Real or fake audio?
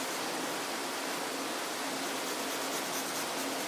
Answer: real